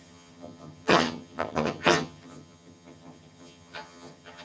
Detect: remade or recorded remade